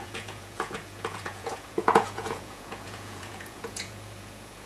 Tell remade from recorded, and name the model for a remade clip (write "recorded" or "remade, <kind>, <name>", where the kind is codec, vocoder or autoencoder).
remade, vocoder, Vocos